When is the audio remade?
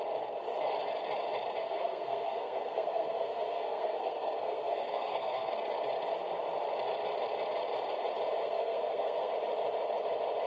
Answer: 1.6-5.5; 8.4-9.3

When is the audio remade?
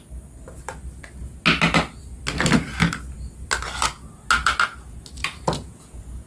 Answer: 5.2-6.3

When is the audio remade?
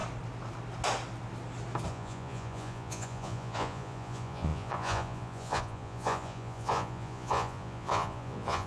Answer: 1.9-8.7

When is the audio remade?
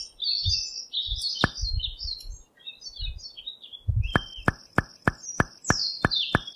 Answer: none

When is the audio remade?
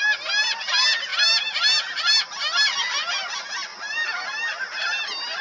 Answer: none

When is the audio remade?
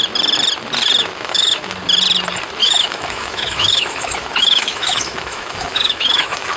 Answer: 1.0-1.7; 2.6-6.6